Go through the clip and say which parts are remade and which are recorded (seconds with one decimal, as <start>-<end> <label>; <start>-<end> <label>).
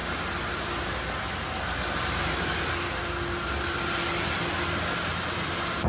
0.0-5.9 recorded